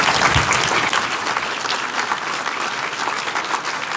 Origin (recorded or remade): recorded